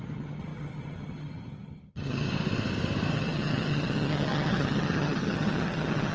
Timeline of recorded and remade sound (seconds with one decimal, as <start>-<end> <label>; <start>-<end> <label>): 0.0-2.3 remade; 2.3-3.1 recorded; 3.1-6.1 remade

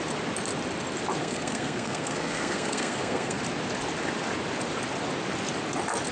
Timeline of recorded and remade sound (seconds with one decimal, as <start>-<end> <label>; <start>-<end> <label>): 0.0-1.2 recorded; 1.2-3.4 remade; 3.4-6.1 recorded

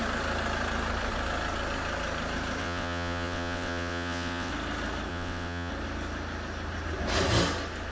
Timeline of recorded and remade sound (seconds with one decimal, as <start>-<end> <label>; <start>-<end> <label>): 0.0-2.6 recorded; 2.6-4.5 remade; 4.5-5.1 recorded; 5.1-5.7 remade; 5.7-7.9 recorded

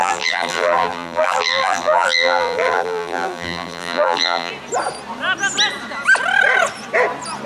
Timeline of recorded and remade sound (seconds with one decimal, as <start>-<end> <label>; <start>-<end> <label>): 0.0-4.5 remade; 4.5-7.5 recorded